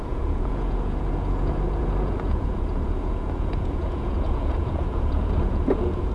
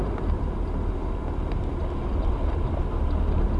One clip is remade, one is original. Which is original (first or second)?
second